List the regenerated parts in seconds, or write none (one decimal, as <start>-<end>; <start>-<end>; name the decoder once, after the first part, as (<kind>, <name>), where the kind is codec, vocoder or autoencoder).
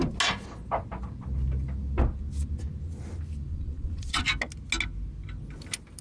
3.5-4.2 (vocoder, Vocos)